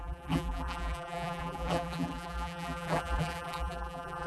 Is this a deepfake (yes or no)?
yes